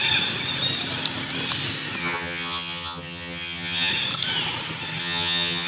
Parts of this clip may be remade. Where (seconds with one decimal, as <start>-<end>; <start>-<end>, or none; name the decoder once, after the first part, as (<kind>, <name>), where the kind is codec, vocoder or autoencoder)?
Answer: 2.0-3.9 (vocoder, HiFi-GAN); 5.0-5.7